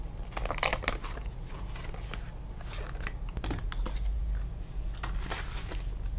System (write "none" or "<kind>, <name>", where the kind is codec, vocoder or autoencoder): none